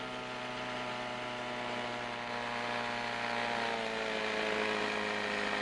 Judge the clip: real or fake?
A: real